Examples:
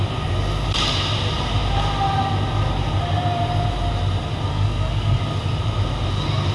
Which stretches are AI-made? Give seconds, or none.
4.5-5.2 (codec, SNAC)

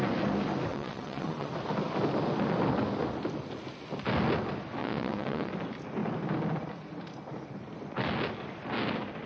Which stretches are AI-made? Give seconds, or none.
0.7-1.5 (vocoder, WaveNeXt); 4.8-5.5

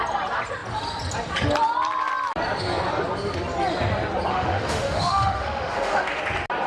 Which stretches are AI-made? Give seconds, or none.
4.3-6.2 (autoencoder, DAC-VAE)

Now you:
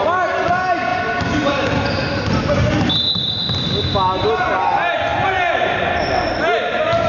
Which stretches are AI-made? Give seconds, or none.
none